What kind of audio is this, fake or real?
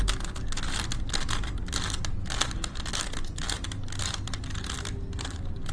real